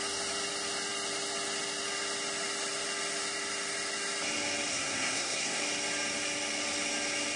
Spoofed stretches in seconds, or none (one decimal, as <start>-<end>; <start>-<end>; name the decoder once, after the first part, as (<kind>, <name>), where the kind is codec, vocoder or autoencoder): 4.7-5.6 (codec, SNAC)